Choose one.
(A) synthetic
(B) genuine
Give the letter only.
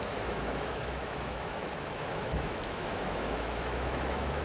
A